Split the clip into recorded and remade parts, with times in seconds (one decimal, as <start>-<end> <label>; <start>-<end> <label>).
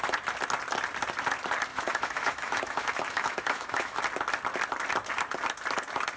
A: 0.0-1.7 recorded; 1.7-4.0 remade; 4.0-6.2 recorded